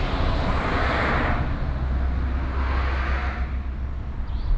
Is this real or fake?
real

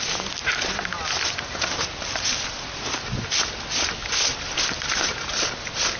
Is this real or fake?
real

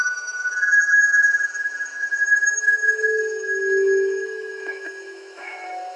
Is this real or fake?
fake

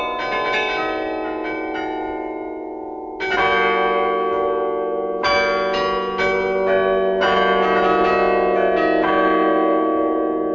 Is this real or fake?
real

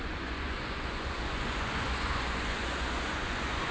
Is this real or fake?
fake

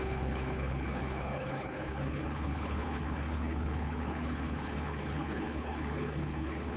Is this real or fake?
fake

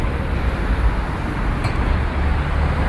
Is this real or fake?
real